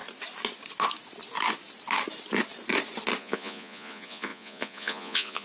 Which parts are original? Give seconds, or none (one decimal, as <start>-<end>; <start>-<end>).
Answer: 0.0-3.2